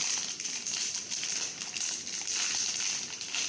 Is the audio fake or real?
real